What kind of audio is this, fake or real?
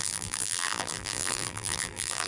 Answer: fake